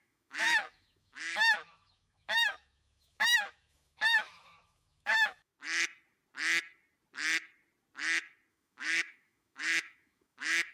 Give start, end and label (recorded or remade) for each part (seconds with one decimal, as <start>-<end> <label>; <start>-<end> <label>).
0.0-5.5 remade; 5.5-8.5 recorded; 8.5-10.7 remade